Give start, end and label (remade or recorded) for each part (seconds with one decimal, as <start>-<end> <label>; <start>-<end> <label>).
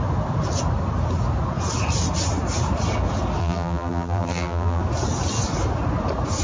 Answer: 0.0-3.4 recorded; 3.4-4.8 remade; 4.8-6.4 recorded